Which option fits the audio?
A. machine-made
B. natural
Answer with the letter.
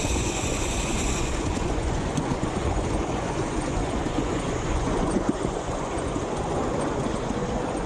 A